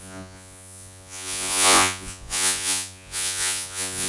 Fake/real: fake